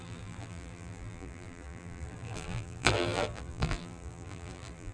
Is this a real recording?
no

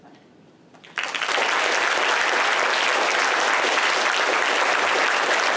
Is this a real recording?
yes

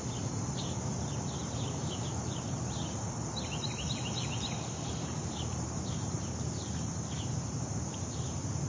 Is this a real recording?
no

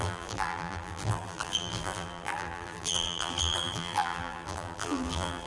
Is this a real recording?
no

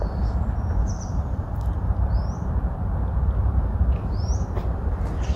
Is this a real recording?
no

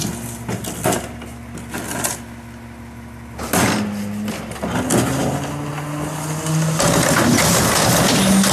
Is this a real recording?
yes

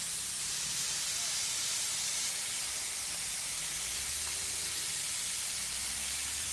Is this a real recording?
no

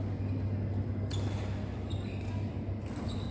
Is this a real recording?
yes